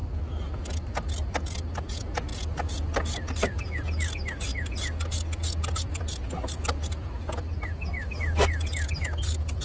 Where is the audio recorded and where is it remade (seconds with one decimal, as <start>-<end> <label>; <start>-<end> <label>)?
0.0-9.6 recorded